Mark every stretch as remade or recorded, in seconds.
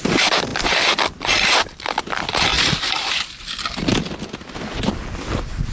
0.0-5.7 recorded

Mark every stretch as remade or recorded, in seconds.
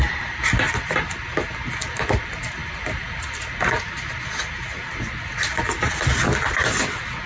0.0-7.3 recorded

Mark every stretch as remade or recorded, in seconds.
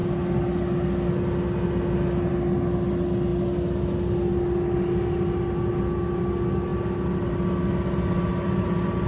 0.0-9.1 recorded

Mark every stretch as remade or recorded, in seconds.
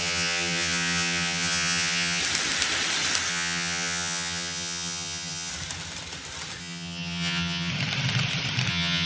0.0-2.2 remade; 2.2-3.3 recorded; 3.3-5.5 remade; 5.5-6.6 recorded; 6.6-7.7 remade; 7.7-8.7 recorded; 8.7-9.1 remade